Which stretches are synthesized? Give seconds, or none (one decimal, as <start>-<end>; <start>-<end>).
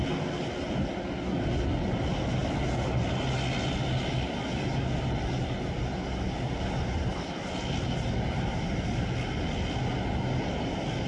none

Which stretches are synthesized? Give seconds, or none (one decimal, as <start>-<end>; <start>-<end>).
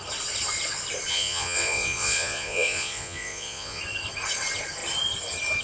1.1-3.8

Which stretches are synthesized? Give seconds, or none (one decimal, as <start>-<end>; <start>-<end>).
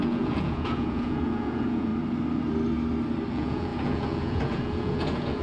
0.0-1.9; 3.3-5.4